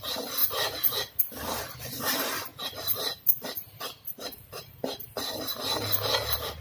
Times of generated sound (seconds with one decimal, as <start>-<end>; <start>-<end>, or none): 0.0-0.4; 1.2-2.5